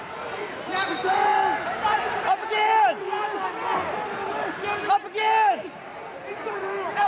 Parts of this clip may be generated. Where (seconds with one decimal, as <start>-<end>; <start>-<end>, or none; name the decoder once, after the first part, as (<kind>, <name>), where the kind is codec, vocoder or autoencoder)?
0.0-1.3 (vocoder, BigVGAN v2); 5.6-7.1